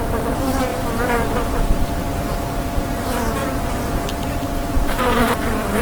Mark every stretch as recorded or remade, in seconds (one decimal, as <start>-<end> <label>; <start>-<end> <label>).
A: 0.0-2.0 remade; 2.0-4.7 recorded; 4.7-5.8 remade